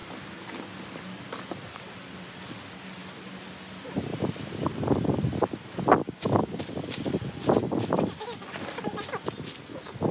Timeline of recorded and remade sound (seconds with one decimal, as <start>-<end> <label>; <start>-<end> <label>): 0.0-6.0 recorded; 6.0-6.6 remade; 6.6-10.1 recorded